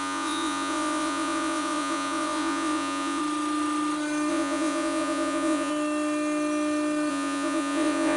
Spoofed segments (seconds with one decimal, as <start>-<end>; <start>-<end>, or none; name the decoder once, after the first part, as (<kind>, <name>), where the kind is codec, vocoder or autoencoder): 0.0-3.2 (vocoder, Vocos); 4.3-5.7; 7.1-8.2

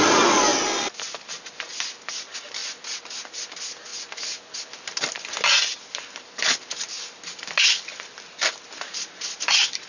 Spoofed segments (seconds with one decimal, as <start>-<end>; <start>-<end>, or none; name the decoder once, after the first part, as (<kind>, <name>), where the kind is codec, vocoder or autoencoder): none

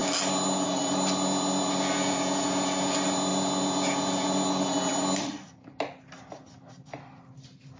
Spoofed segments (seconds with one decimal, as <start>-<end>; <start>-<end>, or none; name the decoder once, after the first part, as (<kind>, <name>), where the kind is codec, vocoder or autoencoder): none

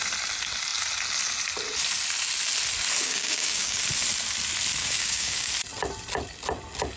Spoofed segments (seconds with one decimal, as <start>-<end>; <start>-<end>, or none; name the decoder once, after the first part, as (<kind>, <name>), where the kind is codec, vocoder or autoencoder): 3.0-3.8 (codec, DAC); 4.8-5.5

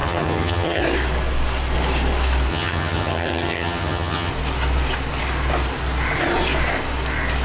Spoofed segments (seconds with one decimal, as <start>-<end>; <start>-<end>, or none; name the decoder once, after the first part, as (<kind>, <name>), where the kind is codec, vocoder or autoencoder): 0.0-0.8 (vocoder, HiFi-GAN); 2.5-4.3

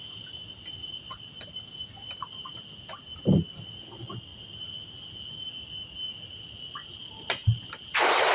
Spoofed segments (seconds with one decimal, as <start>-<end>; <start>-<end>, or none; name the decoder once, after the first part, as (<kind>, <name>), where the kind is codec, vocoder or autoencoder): none